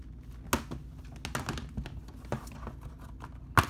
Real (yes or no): yes